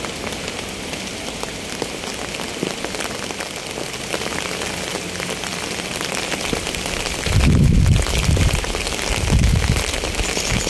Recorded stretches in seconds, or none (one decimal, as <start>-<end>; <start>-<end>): 0.0-10.7